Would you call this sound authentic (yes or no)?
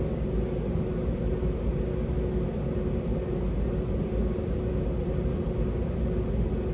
yes